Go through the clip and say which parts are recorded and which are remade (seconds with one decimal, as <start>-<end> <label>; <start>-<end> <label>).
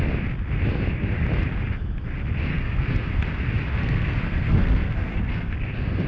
0.0-2.5 recorded; 2.5-3.1 remade; 3.1-3.8 recorded; 3.8-5.5 remade; 5.5-6.1 recorded